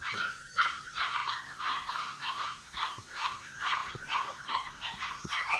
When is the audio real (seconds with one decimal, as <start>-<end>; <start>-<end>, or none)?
none